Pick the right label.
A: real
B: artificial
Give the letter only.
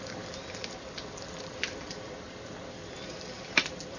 B